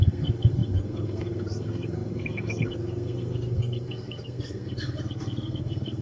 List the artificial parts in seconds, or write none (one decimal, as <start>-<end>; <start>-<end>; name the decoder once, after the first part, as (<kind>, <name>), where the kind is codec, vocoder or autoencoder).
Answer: 0.0-6.0 (codec, SNAC)